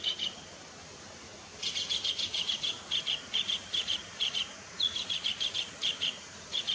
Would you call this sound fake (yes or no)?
yes